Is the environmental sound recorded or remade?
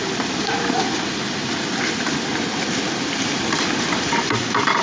remade